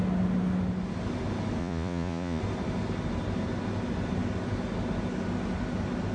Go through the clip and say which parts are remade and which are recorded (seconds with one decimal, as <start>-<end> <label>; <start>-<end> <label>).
0.0-1.6 recorded; 1.6-2.4 remade; 2.4-6.1 recorded

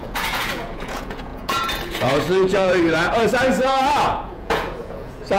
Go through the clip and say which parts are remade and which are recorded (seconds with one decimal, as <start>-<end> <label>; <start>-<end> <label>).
0.0-5.4 remade

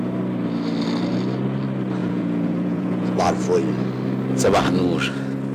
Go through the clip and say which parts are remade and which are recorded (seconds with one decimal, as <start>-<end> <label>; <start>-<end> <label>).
0.0-2.0 recorded; 2.0-3.2 remade; 3.2-5.5 recorded

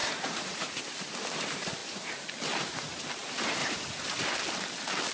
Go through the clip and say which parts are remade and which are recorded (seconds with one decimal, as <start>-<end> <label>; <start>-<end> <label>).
0.0-0.8 remade; 0.8-3.6 recorded; 3.6-4.2 remade; 4.2-5.1 recorded

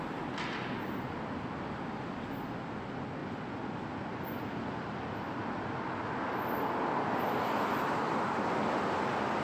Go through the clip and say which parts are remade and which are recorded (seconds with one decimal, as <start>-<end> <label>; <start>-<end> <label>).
0.0-9.4 recorded

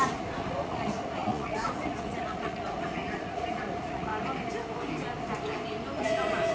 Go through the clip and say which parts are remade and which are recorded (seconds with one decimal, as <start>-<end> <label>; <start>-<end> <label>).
0.0-4.1 remade; 4.1-6.0 recorded; 6.0-6.5 remade